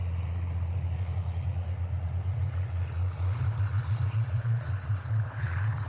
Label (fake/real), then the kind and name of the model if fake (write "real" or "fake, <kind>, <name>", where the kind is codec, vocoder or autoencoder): fake, vocoder, Vocos